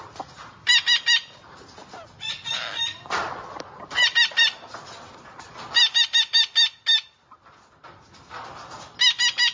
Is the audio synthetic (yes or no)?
no